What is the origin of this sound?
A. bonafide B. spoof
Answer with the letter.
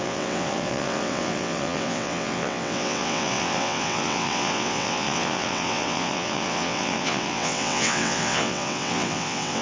B